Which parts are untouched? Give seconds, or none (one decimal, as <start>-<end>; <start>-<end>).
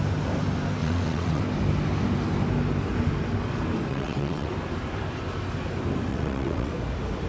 0.0-0.8; 1.4-3.9; 4.5-6.1; 6.7-7.3